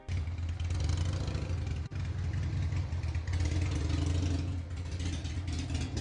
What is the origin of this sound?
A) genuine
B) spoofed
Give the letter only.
A